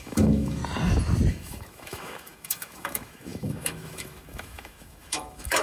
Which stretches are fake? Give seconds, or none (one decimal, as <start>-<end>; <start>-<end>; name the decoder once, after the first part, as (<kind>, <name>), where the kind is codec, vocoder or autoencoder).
0.0-0.6 (autoencoder, DAC-VAE); 1.3-5.6